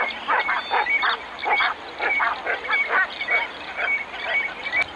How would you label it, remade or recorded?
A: recorded